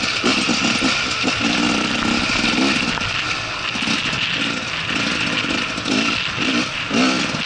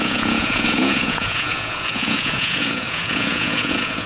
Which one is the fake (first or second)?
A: second